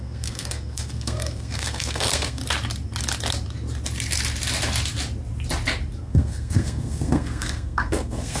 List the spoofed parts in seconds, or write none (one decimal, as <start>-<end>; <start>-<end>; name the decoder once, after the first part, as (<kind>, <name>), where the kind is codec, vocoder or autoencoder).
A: 0.0-2.4 (codec, SNAC); 6.0-8.4